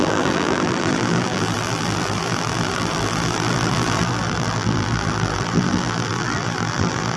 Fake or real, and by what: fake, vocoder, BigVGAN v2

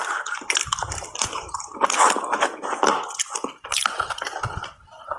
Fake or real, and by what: real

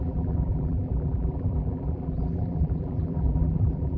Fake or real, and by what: fake, vocoder, BigVGAN v2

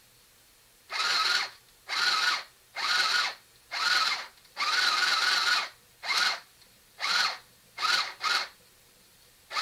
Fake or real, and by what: fake, vocoder, BigVGAN v2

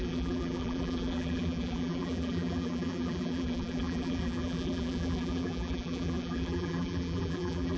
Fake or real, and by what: fake, vocoder, BigVGAN v2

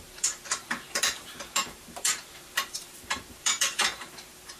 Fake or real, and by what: fake, vocoder, BigVGAN v2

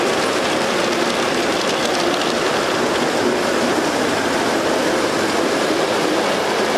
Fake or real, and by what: fake, vocoder, BigVGAN v2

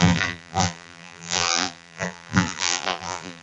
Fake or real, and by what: fake, vocoder, BigVGAN v2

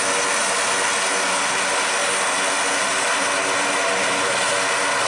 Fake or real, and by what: real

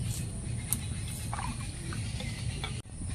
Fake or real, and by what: real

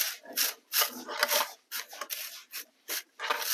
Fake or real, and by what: real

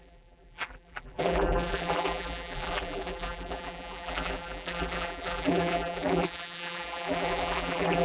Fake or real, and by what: fake, vocoder, BigVGAN v2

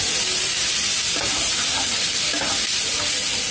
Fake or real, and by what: fake, vocoder, BigVGAN v2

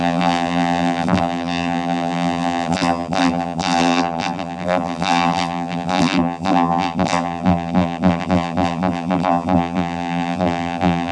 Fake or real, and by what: fake, vocoder, BigVGAN v2